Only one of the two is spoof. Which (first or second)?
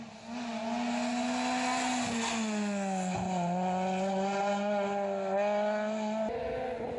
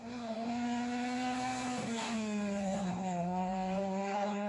second